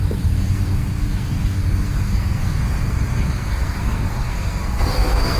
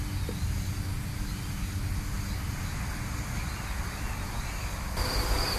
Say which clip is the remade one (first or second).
first